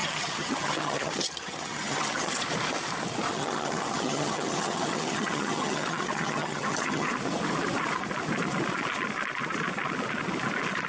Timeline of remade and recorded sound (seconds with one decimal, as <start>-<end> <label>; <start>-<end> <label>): 0.0-2.4 remade; 2.4-3.3 recorded; 3.3-7.1 remade; 7.1-10.9 recorded